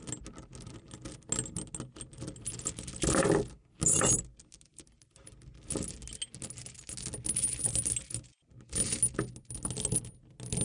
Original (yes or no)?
yes